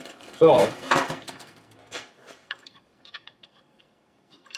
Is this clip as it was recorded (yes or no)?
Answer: no